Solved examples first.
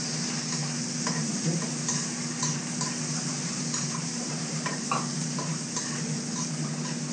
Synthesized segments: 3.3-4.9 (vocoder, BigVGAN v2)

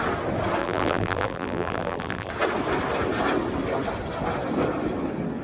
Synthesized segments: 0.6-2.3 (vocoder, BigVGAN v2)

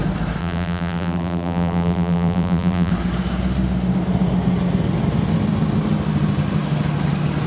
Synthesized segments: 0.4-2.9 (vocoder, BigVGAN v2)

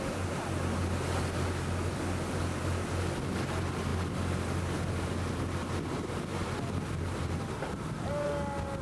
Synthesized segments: 6.3-8.1 (vocoder, BigVGAN v2)

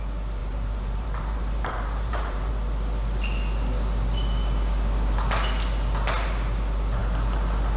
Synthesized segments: 0.4-2.5 (vocoder, BigVGAN v2)